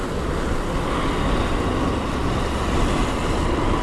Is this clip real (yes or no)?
yes